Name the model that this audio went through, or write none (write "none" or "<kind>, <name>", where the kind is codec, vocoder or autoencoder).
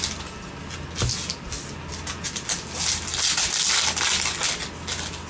none